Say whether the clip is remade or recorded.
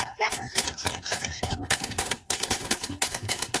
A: remade